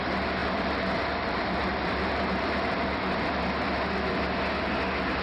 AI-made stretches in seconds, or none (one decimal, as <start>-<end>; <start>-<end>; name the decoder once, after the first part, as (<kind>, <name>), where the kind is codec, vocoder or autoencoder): 0.4-3.3 (vocoder, BigVGAN v2)